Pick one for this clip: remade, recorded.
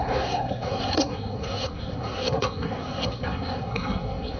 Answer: remade